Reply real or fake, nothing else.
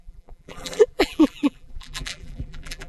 fake